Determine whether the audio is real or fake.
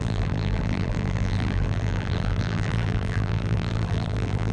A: fake